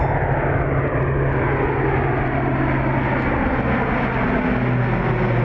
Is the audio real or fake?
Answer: real